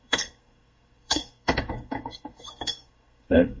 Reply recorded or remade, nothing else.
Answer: remade